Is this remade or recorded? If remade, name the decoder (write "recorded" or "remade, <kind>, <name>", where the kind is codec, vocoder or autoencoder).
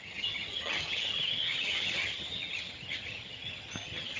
remade, vocoder, HiFi-GAN